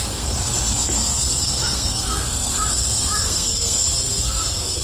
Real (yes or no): no